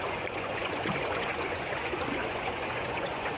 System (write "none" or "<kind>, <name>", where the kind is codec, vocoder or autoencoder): vocoder, Vocos